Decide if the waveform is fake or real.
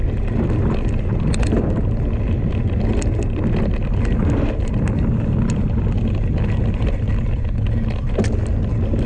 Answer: real